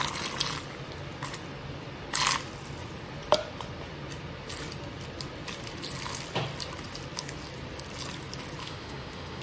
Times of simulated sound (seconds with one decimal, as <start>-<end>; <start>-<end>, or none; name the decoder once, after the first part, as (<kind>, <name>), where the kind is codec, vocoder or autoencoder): 8.6-9.4 (autoencoder, DAC-VAE)